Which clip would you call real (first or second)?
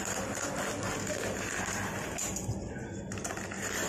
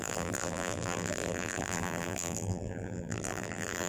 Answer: first